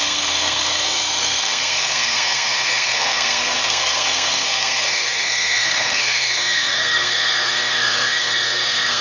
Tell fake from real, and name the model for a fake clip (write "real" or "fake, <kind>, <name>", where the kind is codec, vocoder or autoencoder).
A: fake, codec, SNAC